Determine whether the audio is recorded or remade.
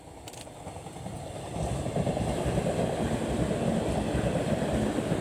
recorded